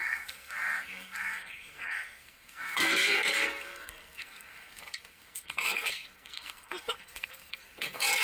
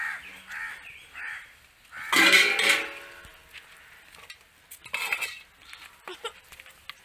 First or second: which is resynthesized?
first